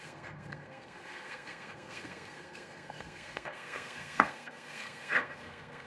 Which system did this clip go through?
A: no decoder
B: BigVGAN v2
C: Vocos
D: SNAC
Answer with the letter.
D